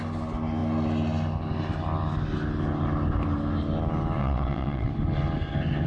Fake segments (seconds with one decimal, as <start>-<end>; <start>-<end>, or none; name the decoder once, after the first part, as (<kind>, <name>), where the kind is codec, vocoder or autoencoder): 4.2-4.9 (vocoder, WaveNeXt)